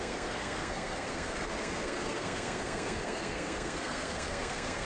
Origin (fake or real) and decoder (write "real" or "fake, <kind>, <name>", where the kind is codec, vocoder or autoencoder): fake, codec, SNAC